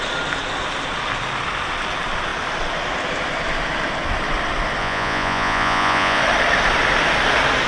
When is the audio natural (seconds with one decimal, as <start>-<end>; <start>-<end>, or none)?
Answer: 0.0-4.8; 6.2-7.7